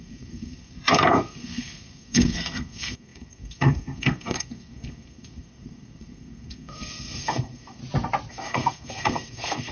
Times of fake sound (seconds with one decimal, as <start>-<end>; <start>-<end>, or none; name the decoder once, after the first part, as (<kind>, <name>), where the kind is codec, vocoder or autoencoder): 0.0-7.8 (codec, SNAC); 8.3-9.7

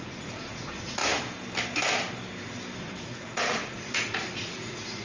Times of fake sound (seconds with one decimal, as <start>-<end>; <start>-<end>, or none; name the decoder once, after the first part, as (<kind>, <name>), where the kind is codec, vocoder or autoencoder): 0.0-1.0 (vocoder, Vocos); 2.8-5.0

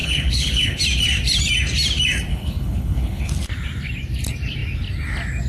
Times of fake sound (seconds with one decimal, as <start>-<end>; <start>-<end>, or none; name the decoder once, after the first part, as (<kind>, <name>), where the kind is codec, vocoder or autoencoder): 0.0-0.8 (codec, HILCodec); 2.3-3.3